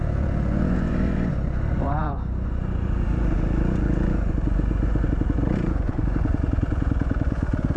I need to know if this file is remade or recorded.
remade